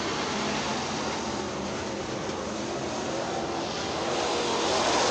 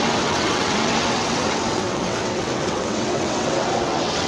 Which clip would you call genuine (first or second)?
first